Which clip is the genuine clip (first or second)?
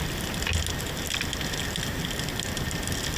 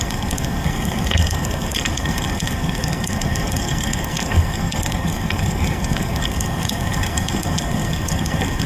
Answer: first